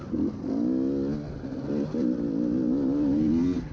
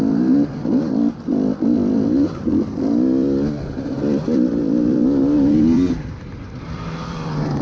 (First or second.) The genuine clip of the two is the first